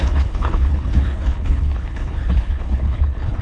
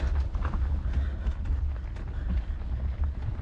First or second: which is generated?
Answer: first